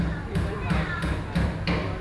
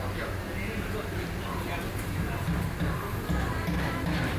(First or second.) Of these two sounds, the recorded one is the second